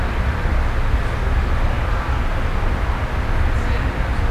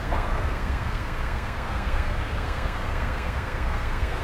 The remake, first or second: second